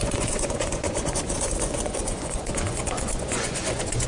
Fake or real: fake